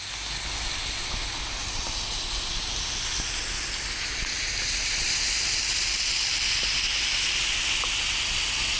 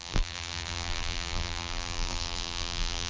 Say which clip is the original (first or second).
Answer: first